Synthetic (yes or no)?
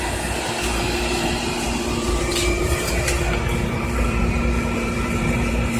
yes